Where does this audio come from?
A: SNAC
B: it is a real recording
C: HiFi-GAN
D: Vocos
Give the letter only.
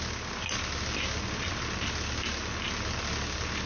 B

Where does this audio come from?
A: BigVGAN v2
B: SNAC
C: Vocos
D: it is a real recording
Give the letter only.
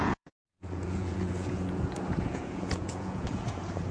C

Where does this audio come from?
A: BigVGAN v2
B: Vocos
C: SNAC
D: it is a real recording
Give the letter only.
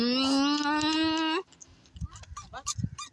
D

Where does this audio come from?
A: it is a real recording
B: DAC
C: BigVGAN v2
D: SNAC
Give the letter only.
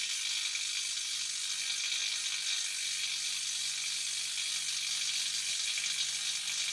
A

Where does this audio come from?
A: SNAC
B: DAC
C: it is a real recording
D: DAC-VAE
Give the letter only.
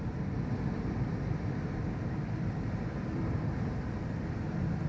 C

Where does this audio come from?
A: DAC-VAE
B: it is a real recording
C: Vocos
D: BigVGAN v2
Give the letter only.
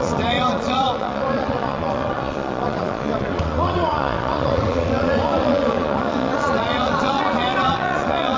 C